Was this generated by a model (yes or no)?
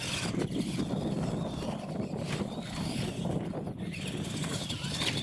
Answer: yes